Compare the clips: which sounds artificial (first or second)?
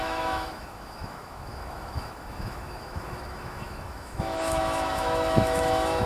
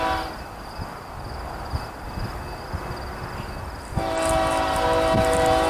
first